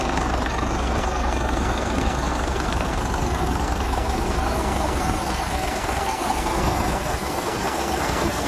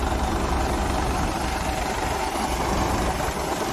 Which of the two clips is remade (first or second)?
first